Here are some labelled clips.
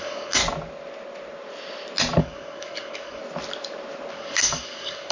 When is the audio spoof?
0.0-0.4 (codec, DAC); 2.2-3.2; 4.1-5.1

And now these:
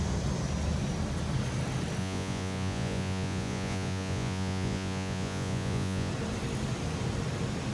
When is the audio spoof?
2.0-6.1 (vocoder, Vocos)

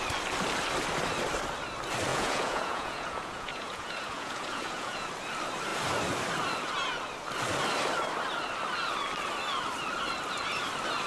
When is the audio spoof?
2.1-5.1 (vocoder, Vocos)

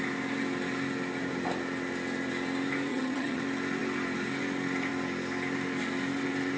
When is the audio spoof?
2.9-3.4 (vocoder, HiFi-GAN)